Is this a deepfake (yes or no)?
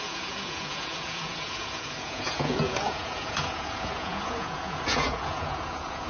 yes